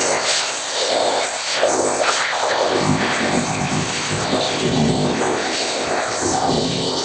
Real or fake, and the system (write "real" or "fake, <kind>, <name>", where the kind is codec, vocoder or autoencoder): fake, codec, ZipCodec